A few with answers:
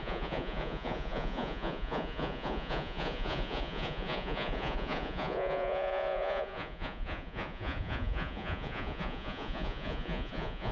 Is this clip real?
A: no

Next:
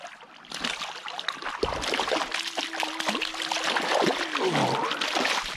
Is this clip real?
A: yes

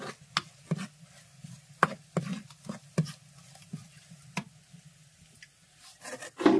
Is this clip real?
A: yes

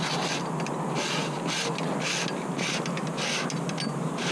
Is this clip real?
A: yes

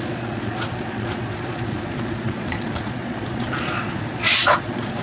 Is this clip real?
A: no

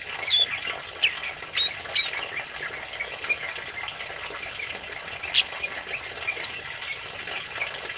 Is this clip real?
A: yes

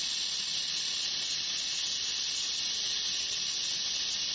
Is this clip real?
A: yes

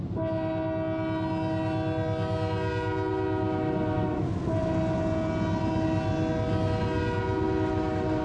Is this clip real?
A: yes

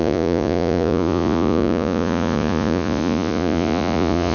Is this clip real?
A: no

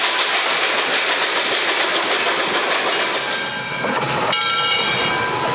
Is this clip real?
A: yes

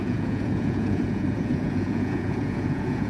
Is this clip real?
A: no